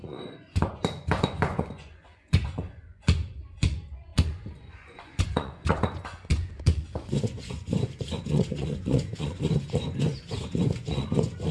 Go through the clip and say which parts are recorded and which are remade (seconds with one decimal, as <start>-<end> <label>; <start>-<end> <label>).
0.0-11.5 remade